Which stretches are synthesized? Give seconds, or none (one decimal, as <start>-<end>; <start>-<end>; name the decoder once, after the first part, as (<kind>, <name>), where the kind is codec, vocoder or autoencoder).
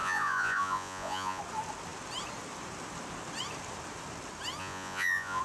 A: 0.0-1.4 (vocoder, Vocos); 4.6-5.4